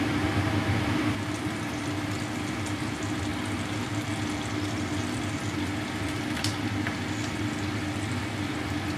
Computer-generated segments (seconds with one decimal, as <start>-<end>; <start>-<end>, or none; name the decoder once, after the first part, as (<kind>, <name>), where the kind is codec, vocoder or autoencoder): none